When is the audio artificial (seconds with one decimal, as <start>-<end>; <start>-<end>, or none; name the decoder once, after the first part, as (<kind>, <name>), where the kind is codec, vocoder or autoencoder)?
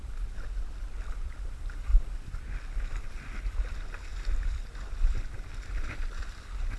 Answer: none